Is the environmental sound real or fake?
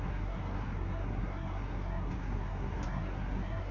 fake